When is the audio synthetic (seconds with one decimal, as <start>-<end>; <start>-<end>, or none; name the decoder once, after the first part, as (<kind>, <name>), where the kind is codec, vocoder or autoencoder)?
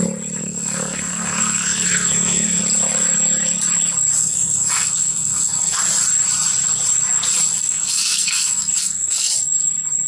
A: 0.4-2.6 (codec, SNAC); 4.2-5.8; 7.5-9.3